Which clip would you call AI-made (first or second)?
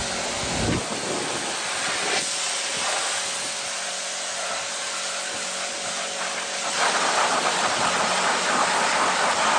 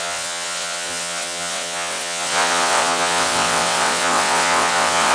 second